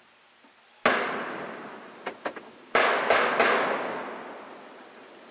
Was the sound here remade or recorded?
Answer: recorded